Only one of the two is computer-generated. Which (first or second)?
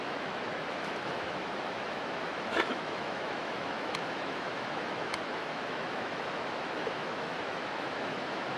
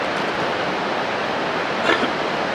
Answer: first